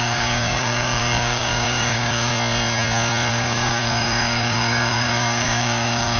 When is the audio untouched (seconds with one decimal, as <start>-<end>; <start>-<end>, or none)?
2.3-3.3